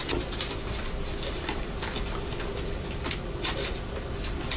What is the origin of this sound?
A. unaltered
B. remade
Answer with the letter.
A